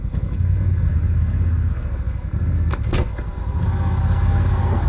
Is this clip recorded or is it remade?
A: remade